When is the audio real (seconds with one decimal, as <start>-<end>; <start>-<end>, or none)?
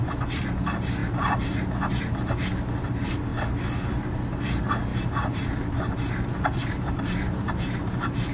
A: 3.3-4.0